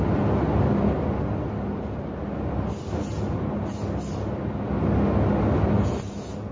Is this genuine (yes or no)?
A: yes